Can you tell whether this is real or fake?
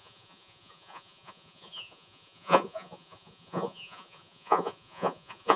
fake